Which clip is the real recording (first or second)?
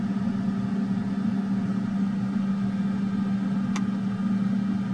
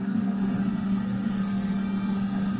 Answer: first